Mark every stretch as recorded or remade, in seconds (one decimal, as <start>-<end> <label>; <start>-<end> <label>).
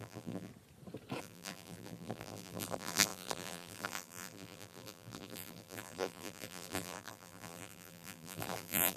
0.0-0.5 remade; 0.5-1.2 recorded; 1.2-9.0 remade